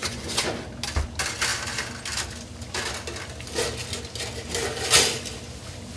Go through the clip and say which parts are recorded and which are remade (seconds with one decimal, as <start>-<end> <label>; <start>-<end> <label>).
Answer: 0.0-0.5 remade; 0.5-6.0 recorded